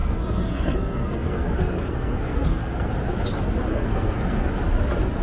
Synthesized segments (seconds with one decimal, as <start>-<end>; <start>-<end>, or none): 0.0-2.9; 3.7-4.5